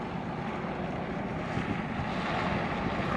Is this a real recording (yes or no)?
yes